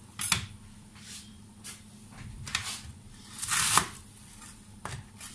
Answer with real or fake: real